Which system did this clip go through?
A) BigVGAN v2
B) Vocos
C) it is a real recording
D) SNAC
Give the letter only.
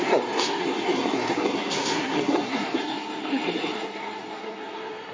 D